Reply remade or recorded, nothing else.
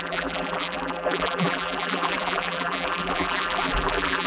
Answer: remade